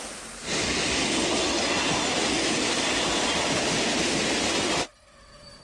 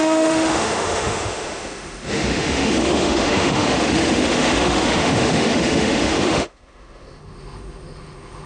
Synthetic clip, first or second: second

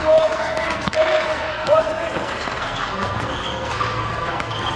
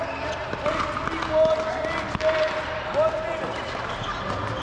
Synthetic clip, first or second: first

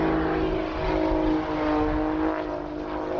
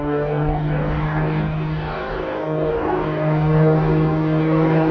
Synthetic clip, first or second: second